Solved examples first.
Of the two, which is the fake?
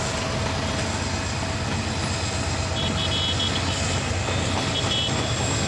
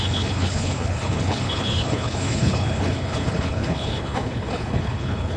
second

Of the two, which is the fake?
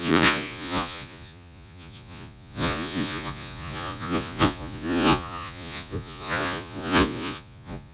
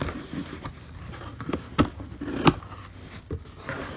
first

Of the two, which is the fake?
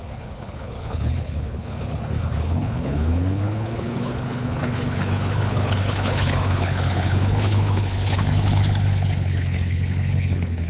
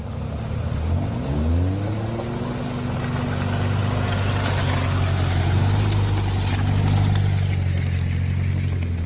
first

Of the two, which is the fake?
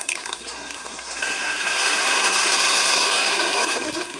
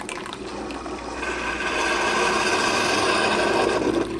first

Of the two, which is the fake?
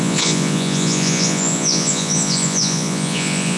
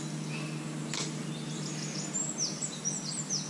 first